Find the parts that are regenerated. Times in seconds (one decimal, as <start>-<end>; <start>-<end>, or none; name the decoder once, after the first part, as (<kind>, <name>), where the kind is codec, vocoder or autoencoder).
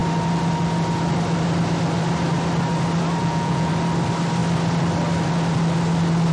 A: 3.2-3.7 (vocoder, Vocos)